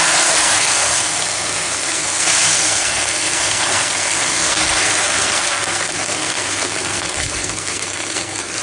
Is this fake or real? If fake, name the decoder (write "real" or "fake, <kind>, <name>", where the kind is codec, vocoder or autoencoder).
fake, codec, SNAC